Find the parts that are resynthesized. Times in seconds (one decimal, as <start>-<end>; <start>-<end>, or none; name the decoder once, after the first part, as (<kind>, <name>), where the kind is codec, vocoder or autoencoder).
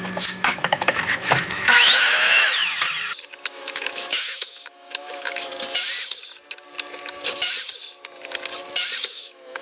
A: 0.0-2.6 (autoencoder, DAC-VAE); 3.5-5.5; 9.1-9.6